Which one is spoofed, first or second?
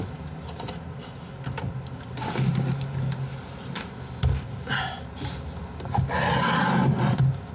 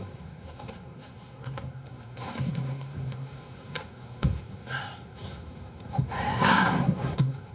second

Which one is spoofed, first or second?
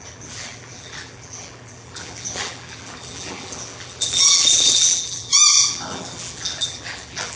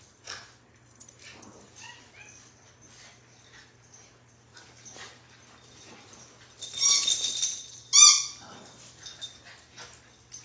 first